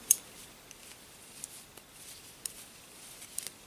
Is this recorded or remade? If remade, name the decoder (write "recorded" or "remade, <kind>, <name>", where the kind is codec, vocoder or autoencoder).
recorded